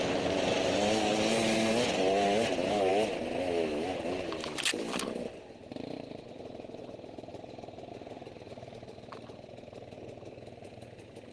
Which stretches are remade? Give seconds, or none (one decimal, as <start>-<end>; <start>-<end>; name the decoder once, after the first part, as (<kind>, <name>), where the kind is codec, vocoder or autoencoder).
none